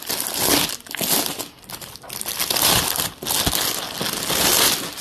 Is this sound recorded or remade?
recorded